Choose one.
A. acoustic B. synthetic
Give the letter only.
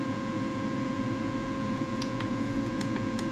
B